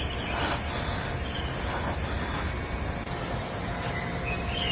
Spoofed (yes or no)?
no